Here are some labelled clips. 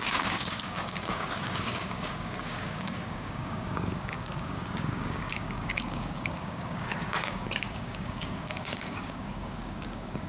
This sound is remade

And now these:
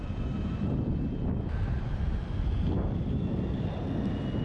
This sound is recorded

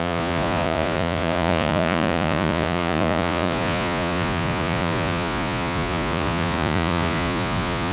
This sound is remade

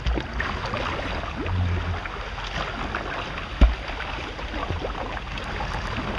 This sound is recorded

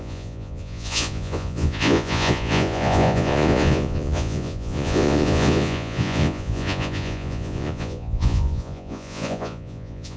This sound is remade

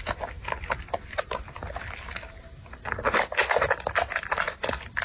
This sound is recorded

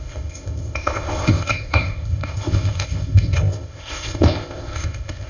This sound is remade